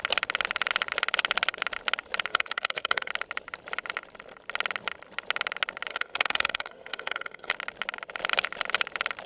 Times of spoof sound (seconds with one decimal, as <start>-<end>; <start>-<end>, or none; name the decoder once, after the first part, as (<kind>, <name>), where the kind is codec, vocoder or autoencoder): 2.3-3.1 (codec, SNAC); 5.9-7.5